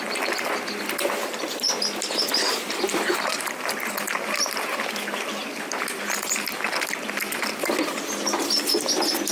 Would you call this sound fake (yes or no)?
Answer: no